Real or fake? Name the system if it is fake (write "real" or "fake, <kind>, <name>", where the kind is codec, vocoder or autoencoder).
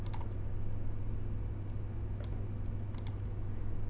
real